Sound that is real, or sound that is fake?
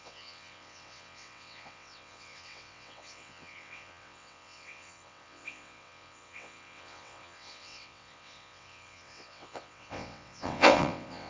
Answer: fake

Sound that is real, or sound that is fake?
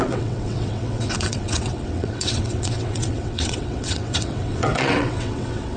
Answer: fake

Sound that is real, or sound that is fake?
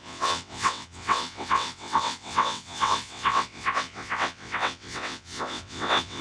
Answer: fake